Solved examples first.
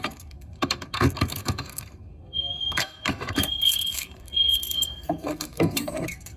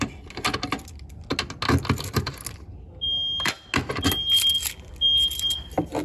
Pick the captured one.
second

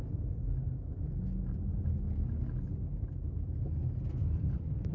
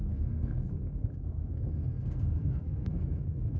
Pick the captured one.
first